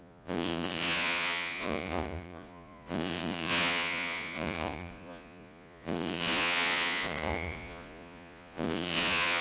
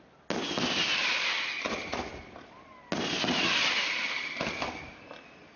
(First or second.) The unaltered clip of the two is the second